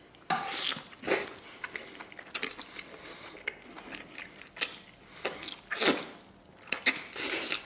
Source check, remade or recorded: recorded